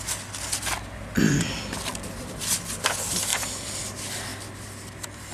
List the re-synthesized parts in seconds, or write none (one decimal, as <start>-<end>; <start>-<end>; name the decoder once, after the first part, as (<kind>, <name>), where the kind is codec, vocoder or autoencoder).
1.9-2.4 (vocoder, BigVGAN v2); 3.3-3.8; 4.3-5.3

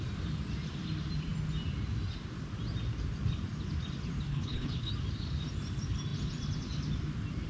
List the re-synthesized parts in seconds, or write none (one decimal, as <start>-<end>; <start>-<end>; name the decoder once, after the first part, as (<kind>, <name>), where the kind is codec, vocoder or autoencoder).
4.3-4.9 (codec, HILCodec)

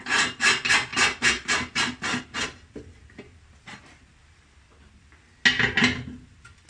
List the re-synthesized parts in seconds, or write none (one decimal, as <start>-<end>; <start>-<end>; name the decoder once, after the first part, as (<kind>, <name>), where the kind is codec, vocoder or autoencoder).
none

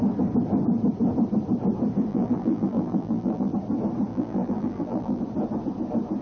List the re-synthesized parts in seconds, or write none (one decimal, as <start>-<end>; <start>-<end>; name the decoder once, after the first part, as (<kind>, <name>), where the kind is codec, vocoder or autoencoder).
2.1-3.5 (vocoder, BigVGAN v2); 4.1-5.2

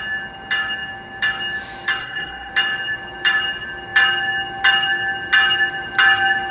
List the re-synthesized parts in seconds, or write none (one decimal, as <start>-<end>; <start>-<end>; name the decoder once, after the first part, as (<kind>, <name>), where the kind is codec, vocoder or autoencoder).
2.0-2.5 (codec, SNAC)

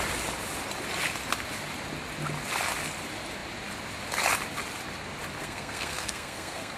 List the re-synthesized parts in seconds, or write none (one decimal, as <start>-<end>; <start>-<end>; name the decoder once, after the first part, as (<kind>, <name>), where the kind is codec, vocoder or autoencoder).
5.4-6.8 (codec, SNAC)